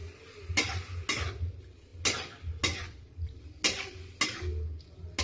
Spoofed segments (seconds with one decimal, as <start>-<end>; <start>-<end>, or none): none